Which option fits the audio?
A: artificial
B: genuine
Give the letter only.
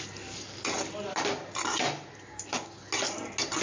B